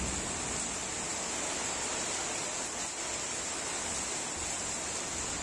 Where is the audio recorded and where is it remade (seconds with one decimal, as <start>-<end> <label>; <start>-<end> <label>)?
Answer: 0.0-5.4 recorded

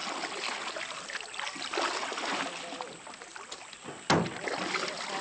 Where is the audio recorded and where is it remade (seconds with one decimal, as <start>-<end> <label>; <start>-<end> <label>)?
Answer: 0.0-5.2 recorded

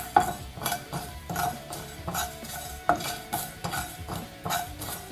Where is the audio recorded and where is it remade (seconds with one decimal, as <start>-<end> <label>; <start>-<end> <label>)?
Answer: 0.0-0.5 recorded; 0.5-3.6 remade; 3.6-4.0 recorded; 4.0-5.1 remade

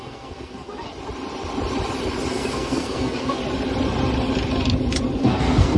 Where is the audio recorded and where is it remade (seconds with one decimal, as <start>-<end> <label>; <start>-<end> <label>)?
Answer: 0.0-0.9 remade; 0.9-2.3 recorded; 2.3-3.4 remade; 3.4-5.2 recorded; 5.2-5.8 remade

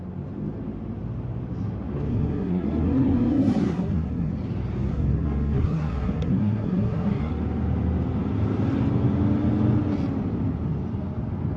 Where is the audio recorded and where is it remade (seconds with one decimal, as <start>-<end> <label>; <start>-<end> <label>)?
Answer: 0.0-2.1 recorded; 2.1-4.3 remade; 4.3-4.9 recorded; 4.9-7.3 remade; 7.3-11.6 recorded

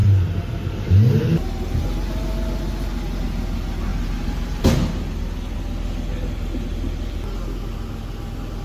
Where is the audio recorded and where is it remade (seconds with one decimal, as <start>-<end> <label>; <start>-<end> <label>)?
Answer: 0.0-0.9 remade; 0.9-3.9 recorded; 3.9-4.6 remade; 4.6-8.6 recorded

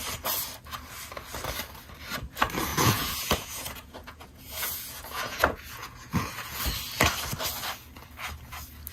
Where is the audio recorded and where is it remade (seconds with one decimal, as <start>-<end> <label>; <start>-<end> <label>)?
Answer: 0.0-2.7 recorded; 2.7-6.6 remade; 6.6-8.9 recorded

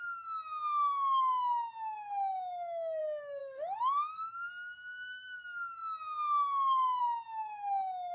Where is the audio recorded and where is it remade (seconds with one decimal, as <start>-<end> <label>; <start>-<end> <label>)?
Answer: 0.0-3.4 recorded; 3.4-4.5 remade; 4.5-8.1 recorded